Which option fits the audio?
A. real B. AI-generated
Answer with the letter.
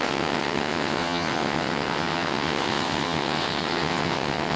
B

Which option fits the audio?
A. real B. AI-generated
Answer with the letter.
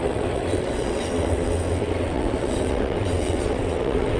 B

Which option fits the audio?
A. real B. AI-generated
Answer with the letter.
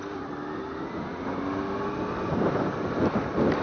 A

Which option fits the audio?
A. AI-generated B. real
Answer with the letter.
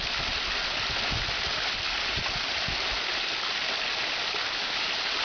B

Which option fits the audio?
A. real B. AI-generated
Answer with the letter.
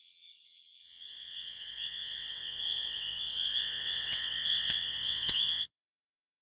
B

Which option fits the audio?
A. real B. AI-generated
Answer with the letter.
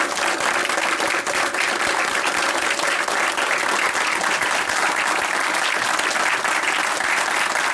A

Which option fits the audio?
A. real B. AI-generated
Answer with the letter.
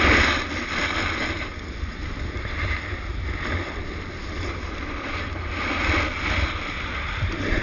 A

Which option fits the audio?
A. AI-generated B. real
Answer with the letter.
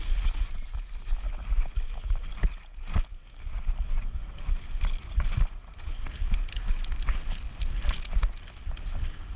B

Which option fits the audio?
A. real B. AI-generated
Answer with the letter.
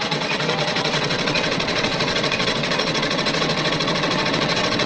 B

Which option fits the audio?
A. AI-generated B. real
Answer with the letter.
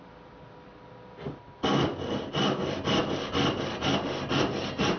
B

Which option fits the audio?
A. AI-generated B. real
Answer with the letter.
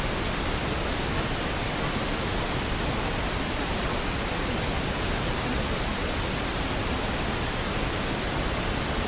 B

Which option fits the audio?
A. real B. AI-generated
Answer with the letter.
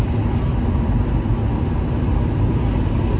A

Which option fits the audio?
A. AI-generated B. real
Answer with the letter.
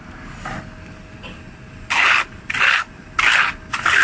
B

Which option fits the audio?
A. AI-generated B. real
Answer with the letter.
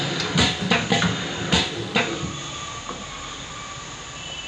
B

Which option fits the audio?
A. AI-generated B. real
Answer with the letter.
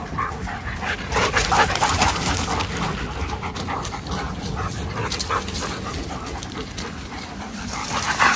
B